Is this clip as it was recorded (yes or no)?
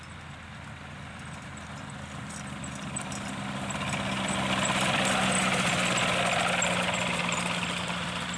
yes